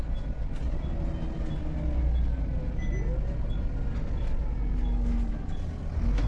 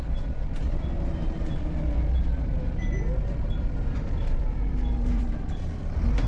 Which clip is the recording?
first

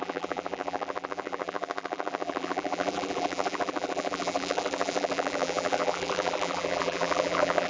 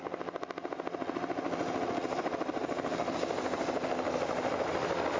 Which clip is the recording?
second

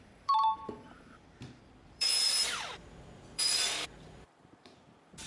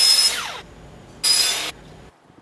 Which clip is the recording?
second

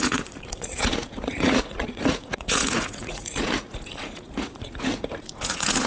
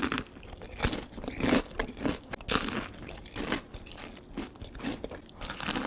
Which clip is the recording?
second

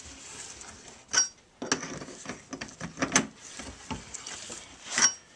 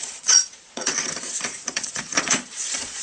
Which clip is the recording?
first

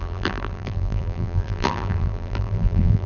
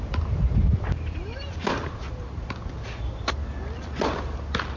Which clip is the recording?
second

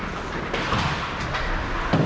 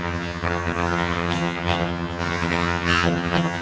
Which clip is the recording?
first